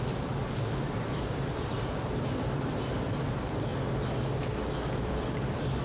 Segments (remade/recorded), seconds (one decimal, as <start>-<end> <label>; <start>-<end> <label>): 0.0-0.4 remade; 0.4-1.0 recorded; 1.0-3.7 remade; 3.7-5.1 recorded; 5.1-5.8 remade